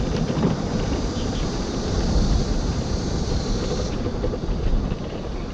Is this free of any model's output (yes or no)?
no